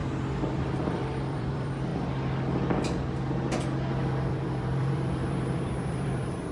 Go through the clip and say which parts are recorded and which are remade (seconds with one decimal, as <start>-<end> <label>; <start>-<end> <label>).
0.0-0.8 recorded; 0.8-1.9 remade; 1.9-4.3 recorded; 4.3-6.5 remade